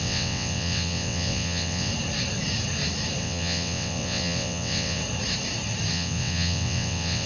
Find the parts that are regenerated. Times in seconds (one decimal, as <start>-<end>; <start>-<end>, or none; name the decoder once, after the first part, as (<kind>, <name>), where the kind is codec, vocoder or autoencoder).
0.0-1.9 (vocoder, WaveNeXt); 3.2-5.0; 5.9-7.3